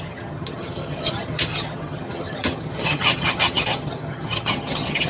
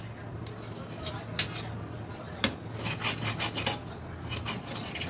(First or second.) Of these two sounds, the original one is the second